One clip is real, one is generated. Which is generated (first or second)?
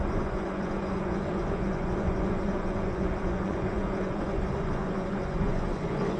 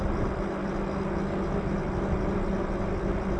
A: first